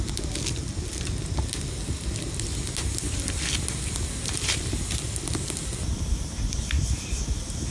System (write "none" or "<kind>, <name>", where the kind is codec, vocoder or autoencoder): none